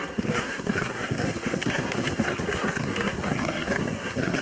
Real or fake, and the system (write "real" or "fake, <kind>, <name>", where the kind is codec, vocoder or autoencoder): fake, codec, SNAC